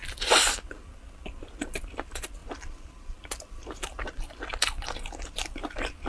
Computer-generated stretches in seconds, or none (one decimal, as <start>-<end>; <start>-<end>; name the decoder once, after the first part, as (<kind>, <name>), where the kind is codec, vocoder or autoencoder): 2.4-2.9 (vocoder, BigVGAN v2)